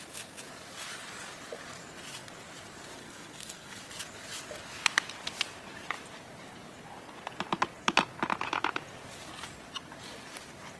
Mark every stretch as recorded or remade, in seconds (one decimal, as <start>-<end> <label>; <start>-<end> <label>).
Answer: 0.0-3.0 recorded; 3.0-3.8 remade; 3.8-10.8 recorded

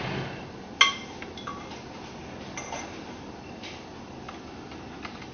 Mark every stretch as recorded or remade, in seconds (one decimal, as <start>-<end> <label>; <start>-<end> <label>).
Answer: 0.0-5.3 recorded